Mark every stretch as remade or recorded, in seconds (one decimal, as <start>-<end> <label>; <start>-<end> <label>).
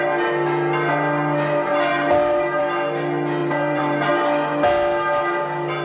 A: 0.0-1.9 recorded; 1.9-2.6 remade; 2.6-3.4 recorded; 3.4-4.1 remade; 4.1-5.8 recorded